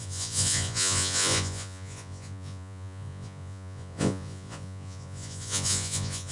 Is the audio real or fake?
fake